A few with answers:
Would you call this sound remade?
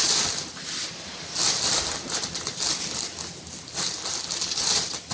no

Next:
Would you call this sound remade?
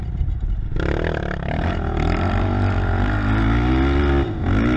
no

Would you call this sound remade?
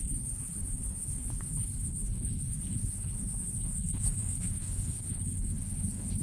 yes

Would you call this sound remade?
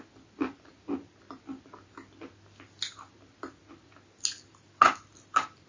no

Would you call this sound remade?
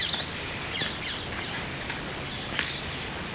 no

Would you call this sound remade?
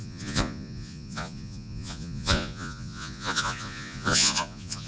yes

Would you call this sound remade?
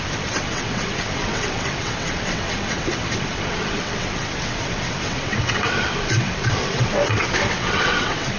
yes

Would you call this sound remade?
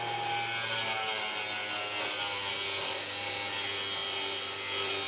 no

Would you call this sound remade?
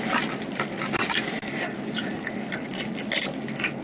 no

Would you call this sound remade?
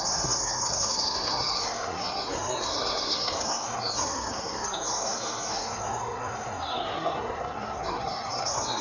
yes